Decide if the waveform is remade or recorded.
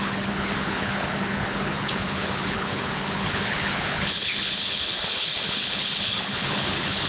remade